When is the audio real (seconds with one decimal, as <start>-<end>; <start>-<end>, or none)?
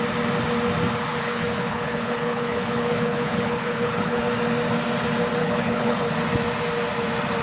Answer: 0.0-1.1; 4.2-5.4; 6.1-7.4